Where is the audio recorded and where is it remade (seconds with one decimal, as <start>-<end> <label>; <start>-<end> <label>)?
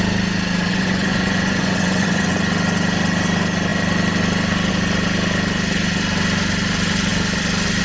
0.0-0.7 recorded; 0.7-2.4 remade; 2.4-7.8 recorded